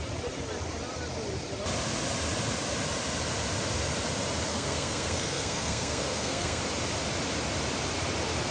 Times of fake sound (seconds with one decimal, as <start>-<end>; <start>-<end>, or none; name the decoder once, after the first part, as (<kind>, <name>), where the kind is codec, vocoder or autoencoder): 4.5-6.6 (codec, SNAC)